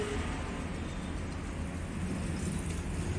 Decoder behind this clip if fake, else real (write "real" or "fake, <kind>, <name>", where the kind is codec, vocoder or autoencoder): real